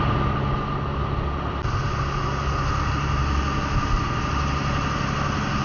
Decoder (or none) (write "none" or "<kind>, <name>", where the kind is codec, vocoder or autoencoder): none